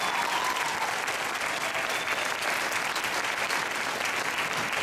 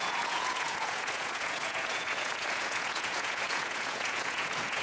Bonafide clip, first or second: first